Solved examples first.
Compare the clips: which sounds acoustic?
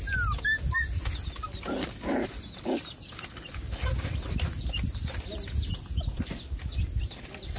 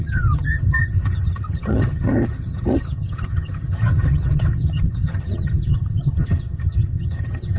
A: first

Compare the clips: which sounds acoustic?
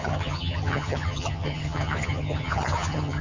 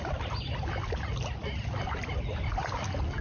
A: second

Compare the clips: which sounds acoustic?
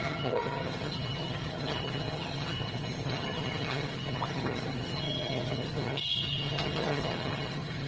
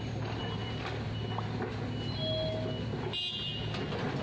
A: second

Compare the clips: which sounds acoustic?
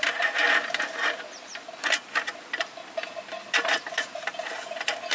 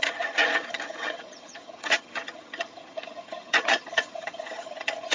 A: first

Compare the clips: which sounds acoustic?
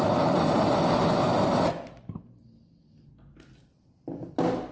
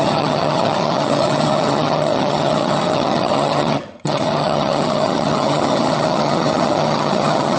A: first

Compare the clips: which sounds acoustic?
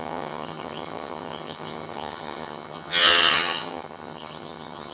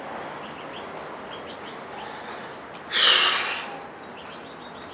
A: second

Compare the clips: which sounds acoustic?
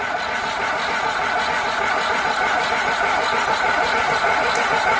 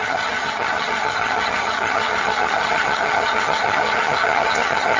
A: first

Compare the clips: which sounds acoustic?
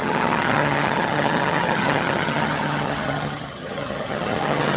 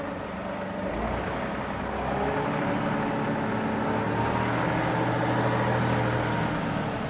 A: second